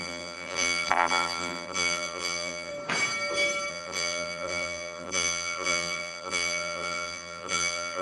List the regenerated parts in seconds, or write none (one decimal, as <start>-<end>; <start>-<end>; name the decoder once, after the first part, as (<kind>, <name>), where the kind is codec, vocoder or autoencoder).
0.0-2.7 (vocoder, BigVGAN v2); 3.7-8.0